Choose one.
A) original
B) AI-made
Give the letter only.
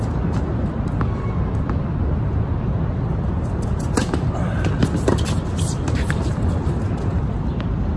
A